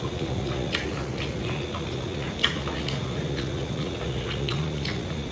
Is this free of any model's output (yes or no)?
no